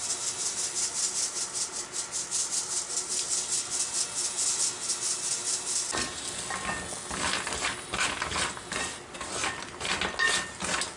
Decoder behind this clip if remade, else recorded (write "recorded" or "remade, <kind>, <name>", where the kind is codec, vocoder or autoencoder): recorded